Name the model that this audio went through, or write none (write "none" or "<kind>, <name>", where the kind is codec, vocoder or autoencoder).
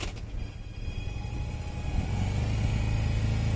none